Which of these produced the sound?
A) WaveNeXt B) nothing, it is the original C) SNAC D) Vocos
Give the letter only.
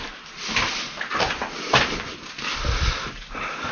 B